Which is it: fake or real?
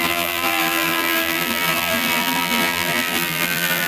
fake